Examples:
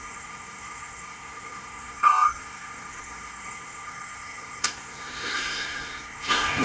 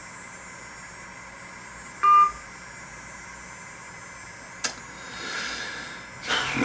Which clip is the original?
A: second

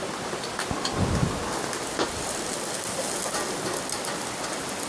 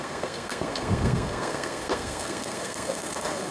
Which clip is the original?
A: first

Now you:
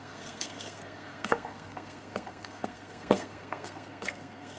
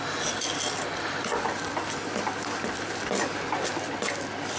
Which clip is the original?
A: second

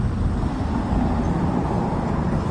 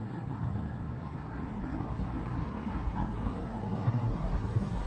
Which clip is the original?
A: first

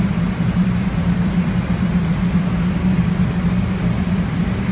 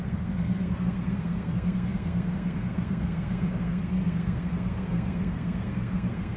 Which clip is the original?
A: first